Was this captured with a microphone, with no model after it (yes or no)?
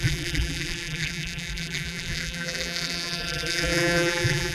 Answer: no